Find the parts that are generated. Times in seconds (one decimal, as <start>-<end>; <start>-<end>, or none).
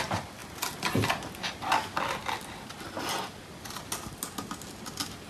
none